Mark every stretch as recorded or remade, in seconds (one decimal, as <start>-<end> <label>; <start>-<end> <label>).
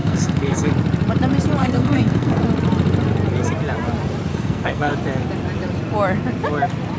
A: 0.0-0.7 remade; 0.7-1.6 recorded; 1.6-2.4 remade; 2.4-4.3 recorded; 4.3-4.9 remade; 4.9-7.0 recorded